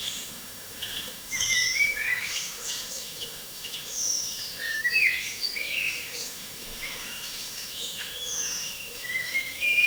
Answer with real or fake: fake